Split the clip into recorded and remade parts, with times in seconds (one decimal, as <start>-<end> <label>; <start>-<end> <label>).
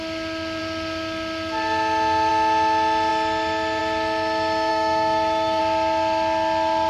0.0-4.7 recorded; 4.7-5.6 remade; 5.6-6.9 recorded